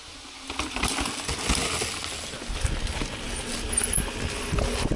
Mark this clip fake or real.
real